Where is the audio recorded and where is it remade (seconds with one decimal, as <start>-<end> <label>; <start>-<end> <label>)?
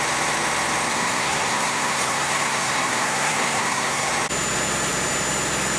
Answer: 0.0-0.9 recorded; 0.9-4.1 remade; 4.1-5.8 recorded